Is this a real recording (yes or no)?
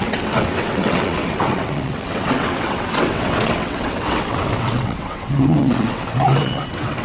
no